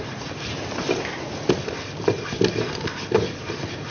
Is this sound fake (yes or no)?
no